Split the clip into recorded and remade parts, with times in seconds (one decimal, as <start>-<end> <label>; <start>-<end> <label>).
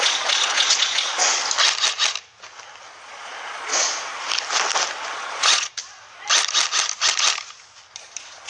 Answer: 0.0-1.2 remade; 1.2-3.0 recorded; 3.0-3.7 remade; 3.7-5.1 recorded; 5.1-5.7 remade; 5.7-8.0 recorded; 8.0-8.5 remade